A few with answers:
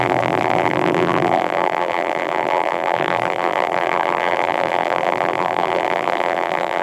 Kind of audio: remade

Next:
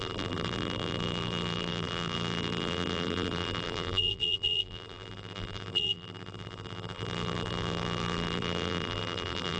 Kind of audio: remade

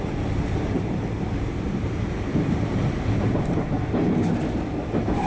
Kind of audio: remade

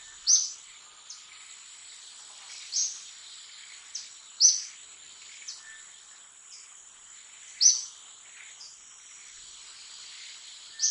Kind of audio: recorded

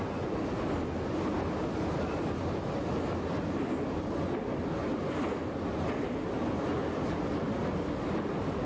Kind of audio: recorded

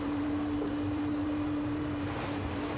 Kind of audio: remade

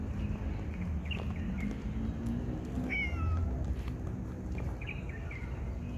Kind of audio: recorded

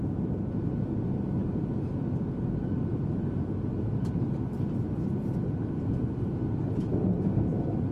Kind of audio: recorded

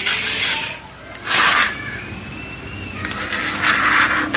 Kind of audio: recorded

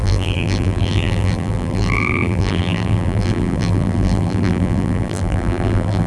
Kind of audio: remade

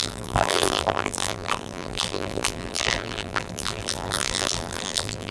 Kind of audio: remade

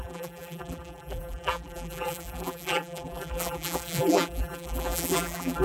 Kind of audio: remade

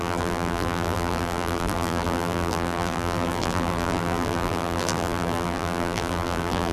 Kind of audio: remade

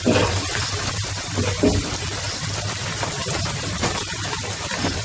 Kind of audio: remade